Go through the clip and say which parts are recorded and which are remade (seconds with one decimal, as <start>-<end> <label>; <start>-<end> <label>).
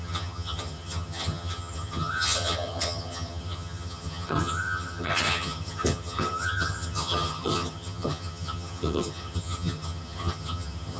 0.0-11.0 remade